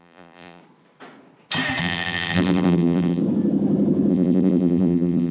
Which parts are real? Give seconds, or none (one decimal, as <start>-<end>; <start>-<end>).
0.6-1.8; 3.2-4.1